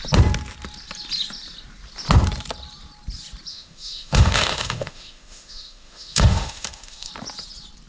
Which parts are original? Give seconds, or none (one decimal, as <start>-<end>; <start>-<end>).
0.0-3.5; 7.1-7.9